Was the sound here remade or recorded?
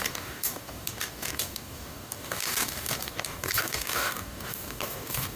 remade